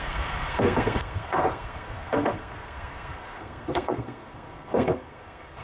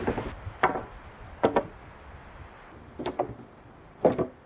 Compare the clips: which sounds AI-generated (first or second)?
first